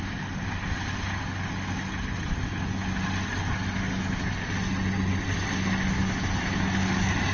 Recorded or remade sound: recorded